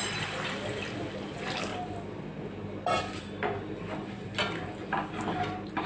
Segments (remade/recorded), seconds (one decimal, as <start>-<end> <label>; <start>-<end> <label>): 0.0-5.9 recorded